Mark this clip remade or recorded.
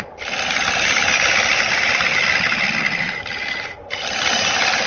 recorded